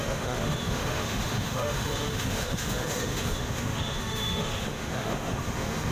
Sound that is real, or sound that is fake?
fake